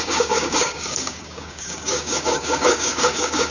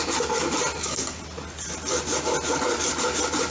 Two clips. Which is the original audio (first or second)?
second